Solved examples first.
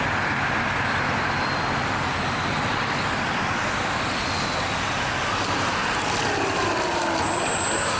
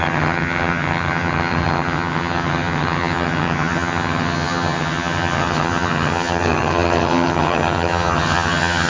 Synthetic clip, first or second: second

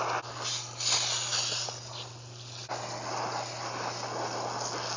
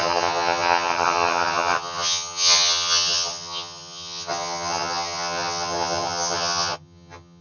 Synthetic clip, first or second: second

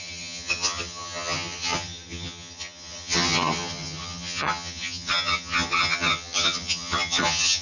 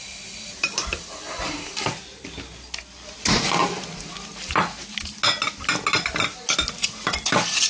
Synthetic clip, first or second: first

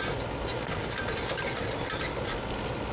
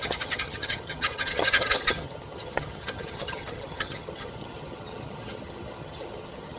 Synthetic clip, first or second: second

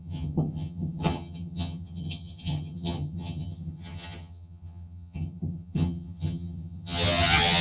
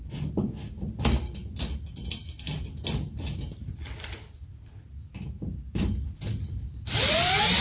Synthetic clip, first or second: first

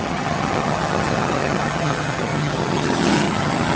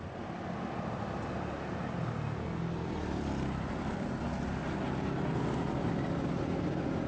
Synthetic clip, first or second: first